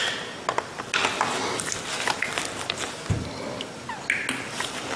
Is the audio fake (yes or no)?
no